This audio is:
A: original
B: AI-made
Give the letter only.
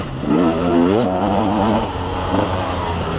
B